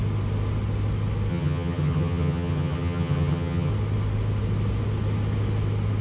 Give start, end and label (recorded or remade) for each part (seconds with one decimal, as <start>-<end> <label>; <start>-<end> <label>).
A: 0.0-1.3 recorded; 1.3-3.7 remade; 3.7-6.0 recorded